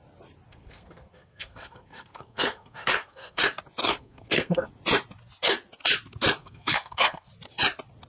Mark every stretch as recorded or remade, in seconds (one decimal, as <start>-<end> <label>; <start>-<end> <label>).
0.0-0.5 recorded; 0.5-3.4 remade; 3.4-3.8 recorded; 3.8-4.7 remade; 4.7-6.4 recorded; 6.4-7.3 remade; 7.3-8.1 recorded

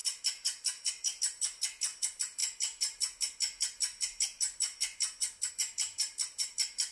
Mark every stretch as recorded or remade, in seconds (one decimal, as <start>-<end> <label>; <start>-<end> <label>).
0.0-6.9 remade

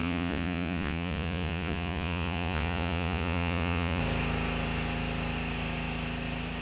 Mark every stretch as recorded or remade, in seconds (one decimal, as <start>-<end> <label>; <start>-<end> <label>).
0.0-4.0 remade; 4.0-6.6 recorded

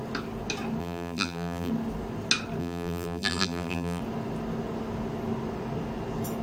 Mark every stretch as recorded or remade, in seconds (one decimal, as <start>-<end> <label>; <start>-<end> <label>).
0.0-0.8 recorded; 0.8-1.7 remade; 1.7-2.6 recorded; 2.6-4.0 remade; 4.0-6.4 recorded

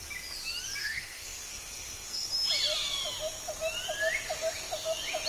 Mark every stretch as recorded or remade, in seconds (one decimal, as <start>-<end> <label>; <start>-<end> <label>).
0.0-0.8 recorded; 0.8-2.3 remade; 2.3-5.3 recorded

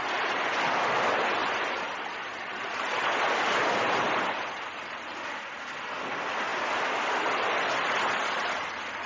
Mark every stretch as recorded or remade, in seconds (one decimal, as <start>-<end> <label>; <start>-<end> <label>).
0.0-9.1 recorded

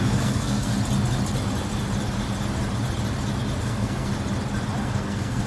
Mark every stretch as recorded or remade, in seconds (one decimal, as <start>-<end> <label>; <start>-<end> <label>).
0.0-0.7 remade; 0.7-3.6 recorded; 3.6-4.1 remade; 4.1-4.8 recorded; 4.8-5.5 remade